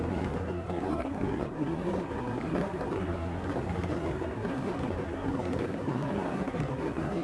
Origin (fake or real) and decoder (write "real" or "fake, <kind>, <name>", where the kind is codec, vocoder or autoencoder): fake, codec, SNAC